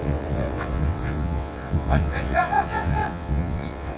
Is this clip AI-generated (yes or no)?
yes